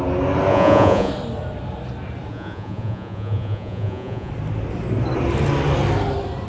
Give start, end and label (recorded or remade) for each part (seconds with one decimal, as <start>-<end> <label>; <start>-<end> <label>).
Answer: 0.0-0.5 recorded; 0.5-1.1 remade; 1.1-2.3 recorded; 2.3-4.3 remade; 4.3-6.5 recorded